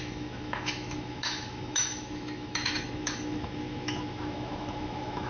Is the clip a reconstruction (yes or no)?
yes